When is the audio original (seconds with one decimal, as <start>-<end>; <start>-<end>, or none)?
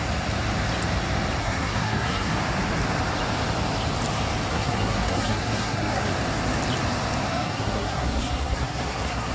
0.0-1.4; 2.4-4.5; 6.1-7.3